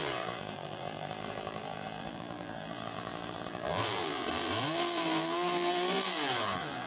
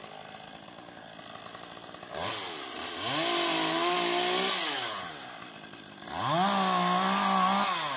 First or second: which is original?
second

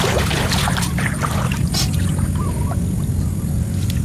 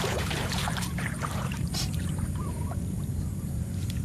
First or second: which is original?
first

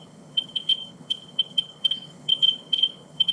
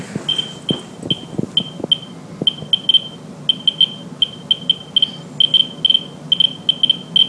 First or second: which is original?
second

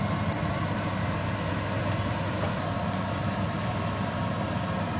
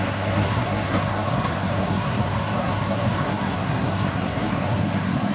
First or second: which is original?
first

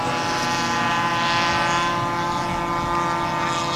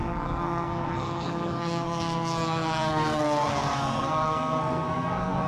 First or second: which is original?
first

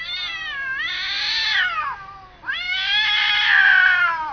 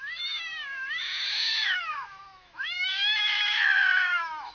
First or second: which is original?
first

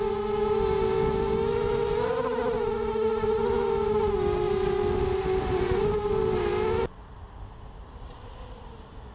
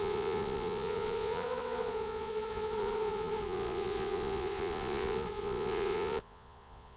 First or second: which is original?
first